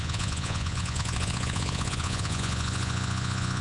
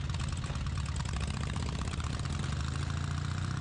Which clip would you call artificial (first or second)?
first